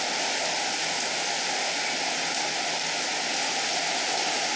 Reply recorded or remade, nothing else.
recorded